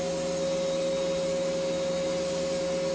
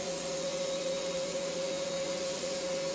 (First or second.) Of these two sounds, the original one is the first